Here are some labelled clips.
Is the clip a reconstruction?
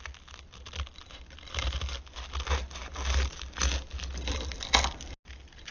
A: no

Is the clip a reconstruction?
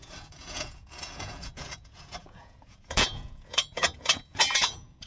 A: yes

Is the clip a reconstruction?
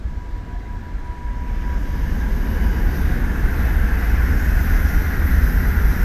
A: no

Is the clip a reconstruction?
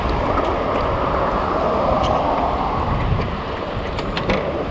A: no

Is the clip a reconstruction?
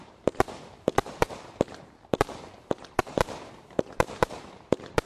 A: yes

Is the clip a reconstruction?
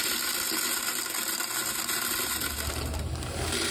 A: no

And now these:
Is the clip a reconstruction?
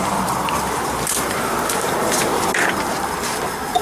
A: yes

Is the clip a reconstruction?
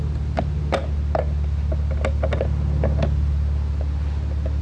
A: no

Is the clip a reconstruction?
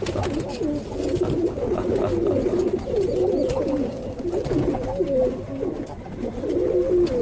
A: no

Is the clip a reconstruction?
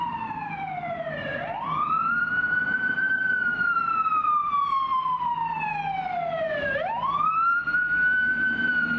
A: yes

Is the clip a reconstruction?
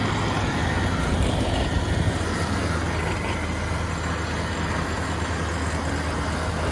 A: no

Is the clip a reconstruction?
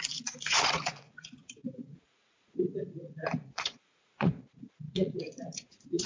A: yes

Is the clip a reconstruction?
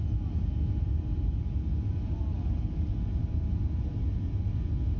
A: no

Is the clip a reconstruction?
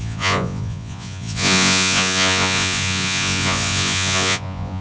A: yes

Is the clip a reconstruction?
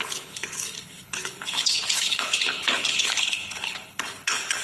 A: yes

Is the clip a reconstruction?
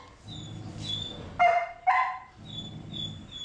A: no